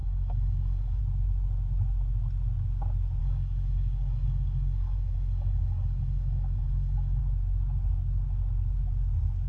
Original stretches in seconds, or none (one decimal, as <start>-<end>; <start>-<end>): 1.0-3.2; 7.2-9.5